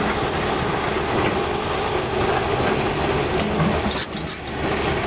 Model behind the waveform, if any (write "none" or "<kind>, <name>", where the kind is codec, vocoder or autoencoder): none